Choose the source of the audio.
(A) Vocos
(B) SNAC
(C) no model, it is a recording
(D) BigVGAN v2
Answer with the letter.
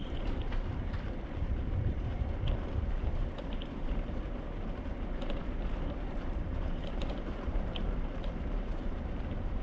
D